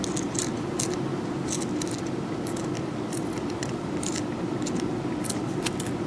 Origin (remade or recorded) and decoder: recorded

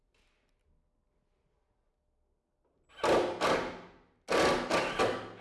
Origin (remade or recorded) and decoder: recorded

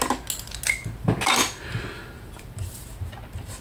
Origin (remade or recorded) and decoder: recorded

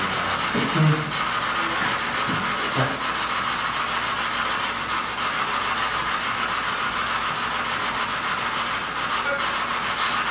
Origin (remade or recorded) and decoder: recorded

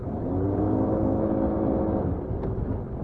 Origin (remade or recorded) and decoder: recorded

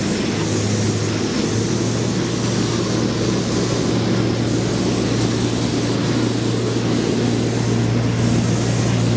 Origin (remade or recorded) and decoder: recorded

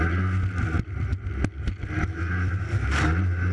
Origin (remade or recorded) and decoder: recorded